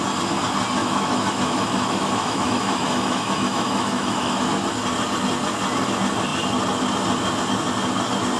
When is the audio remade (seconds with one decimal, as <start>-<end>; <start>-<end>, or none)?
0.8-4.4